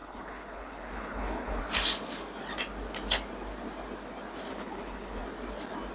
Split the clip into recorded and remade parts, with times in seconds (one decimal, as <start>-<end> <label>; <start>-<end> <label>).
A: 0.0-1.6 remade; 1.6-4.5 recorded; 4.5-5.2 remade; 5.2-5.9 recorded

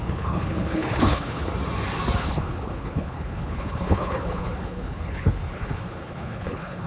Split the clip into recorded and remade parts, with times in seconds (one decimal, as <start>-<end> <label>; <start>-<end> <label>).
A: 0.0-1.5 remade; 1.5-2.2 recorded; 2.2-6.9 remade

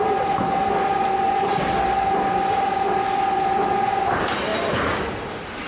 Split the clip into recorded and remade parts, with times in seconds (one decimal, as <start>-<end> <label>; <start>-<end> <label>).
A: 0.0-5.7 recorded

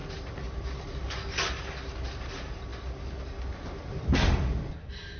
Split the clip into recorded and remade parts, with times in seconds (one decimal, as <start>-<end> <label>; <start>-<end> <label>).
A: 0.0-5.2 recorded